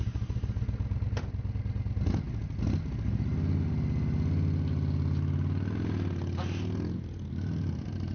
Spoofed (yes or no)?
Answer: no